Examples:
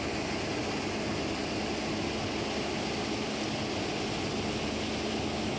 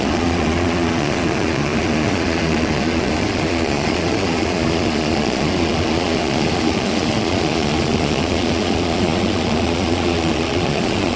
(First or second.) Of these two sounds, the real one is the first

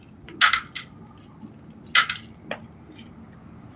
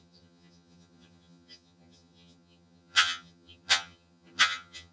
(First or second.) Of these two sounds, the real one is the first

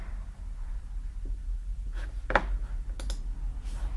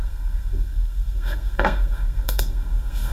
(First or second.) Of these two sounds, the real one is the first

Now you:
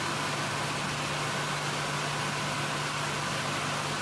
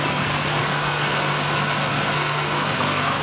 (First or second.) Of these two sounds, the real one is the first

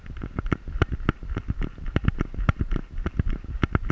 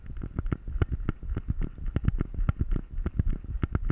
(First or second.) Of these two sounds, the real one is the second